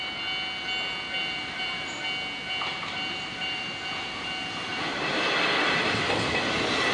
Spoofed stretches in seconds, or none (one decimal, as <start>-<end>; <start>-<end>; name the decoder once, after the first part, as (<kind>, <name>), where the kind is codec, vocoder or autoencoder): 1.2-2.0 (vocoder, BigVGAN v2); 2.7-3.7; 4.7-5.2